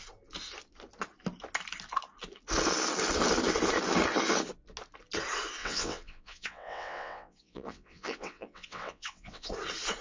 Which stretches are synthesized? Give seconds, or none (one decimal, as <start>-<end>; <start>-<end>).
5.6-9.5